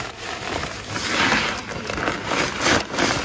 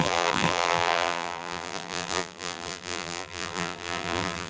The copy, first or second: second